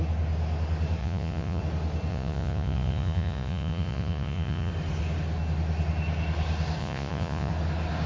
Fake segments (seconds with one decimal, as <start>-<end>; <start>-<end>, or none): 1.0-1.6; 2.1-4.7; 6.8-7.5

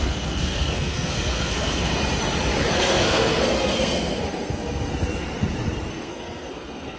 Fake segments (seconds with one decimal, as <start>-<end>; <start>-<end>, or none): 0.0-1.9; 2.7-4.9; 5.9-7.0

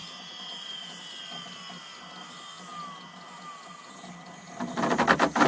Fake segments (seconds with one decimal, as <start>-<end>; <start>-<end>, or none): none

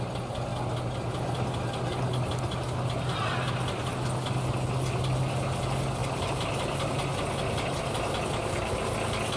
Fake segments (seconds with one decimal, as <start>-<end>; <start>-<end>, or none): none

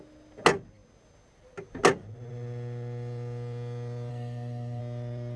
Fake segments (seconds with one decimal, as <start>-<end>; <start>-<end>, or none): 4.1-4.8

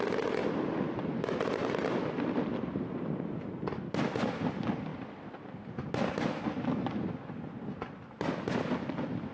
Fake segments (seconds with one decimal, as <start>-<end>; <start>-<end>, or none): none

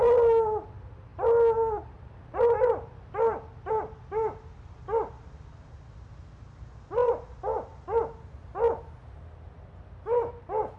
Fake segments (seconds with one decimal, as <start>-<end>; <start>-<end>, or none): none